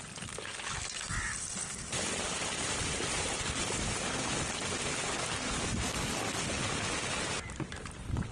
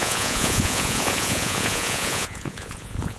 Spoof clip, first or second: second